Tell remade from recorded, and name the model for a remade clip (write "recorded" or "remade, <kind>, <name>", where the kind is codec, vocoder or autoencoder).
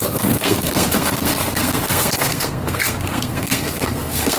remade, codec, SNAC